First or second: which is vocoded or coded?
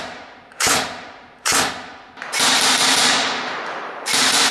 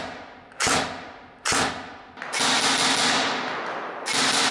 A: first